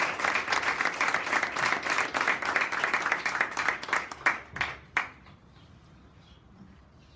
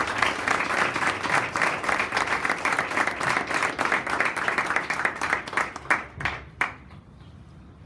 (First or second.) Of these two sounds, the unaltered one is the first